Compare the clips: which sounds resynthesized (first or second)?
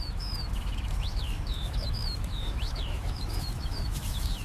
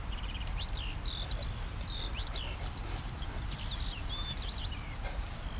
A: first